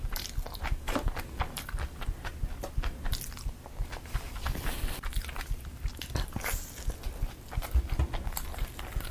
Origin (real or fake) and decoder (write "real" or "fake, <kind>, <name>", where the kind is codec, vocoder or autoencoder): real